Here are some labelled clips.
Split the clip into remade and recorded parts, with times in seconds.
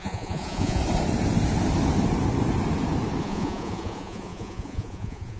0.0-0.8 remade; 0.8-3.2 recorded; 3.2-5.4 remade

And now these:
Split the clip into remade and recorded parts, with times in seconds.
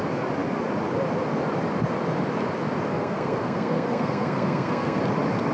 0.0-2.9 recorded; 2.9-5.0 remade; 5.0-5.5 recorded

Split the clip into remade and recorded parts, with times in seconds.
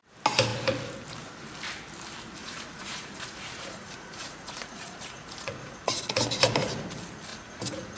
0.0-2.4 recorded; 2.4-6.2 remade; 6.2-7.3 recorded; 7.3-8.0 remade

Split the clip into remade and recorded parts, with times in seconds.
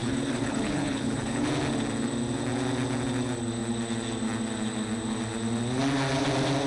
0.0-1.5 remade; 1.5-6.7 recorded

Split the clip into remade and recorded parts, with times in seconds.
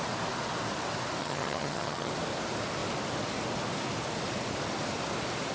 0.0-1.2 recorded; 1.2-2.1 remade; 2.1-5.5 recorded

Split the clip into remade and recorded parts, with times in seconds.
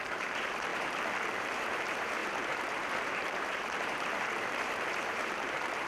0.0-5.9 remade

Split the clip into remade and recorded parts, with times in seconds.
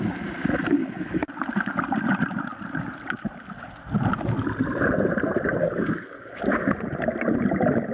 0.0-0.8 recorded; 0.8-1.3 remade; 1.3-5.6 recorded; 5.6-6.4 remade; 6.4-7.9 recorded